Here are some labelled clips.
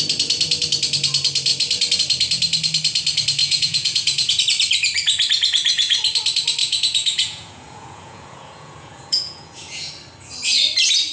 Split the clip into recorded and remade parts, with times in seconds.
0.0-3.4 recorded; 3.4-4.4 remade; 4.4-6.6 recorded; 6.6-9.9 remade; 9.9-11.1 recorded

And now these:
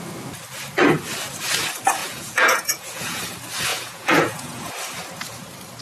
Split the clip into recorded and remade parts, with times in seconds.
0.0-2.0 recorded; 2.0-3.2 remade; 3.2-3.7 recorded; 3.7-4.7 remade; 4.7-5.8 recorded

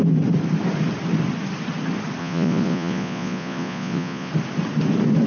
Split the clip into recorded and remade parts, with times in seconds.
0.0-2.2 recorded; 2.2-4.3 remade; 4.3-5.3 recorded

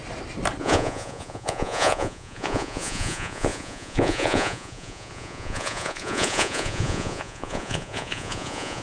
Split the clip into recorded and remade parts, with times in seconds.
0.0-0.6 recorded; 0.6-8.8 remade

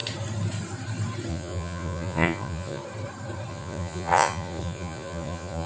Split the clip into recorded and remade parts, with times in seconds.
0.0-1.3 recorded; 1.3-2.8 remade; 2.8-3.5 recorded; 3.5-5.7 remade

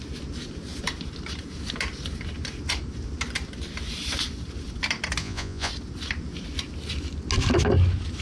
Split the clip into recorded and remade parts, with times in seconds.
0.0-5.2 recorded; 5.2-5.7 remade; 5.7-8.2 recorded